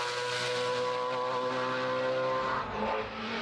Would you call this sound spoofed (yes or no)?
no